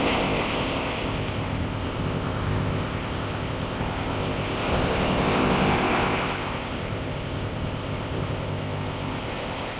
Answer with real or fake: fake